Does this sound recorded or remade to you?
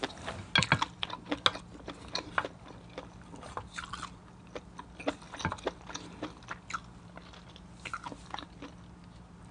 recorded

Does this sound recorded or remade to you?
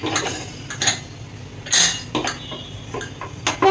recorded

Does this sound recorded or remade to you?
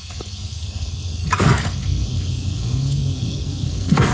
remade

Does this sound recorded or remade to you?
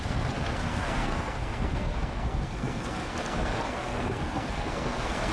remade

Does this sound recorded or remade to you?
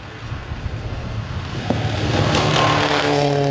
remade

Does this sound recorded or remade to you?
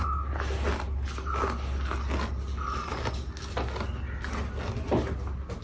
recorded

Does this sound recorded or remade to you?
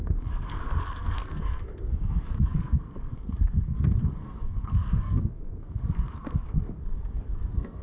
remade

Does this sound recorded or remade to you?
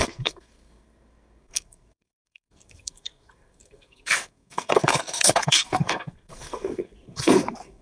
remade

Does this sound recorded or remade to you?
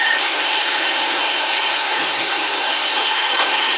remade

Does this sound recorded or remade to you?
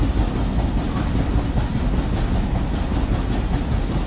recorded